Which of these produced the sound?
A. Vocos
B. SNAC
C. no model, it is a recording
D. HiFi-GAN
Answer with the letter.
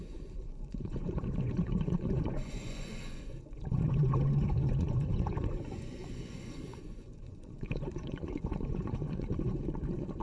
A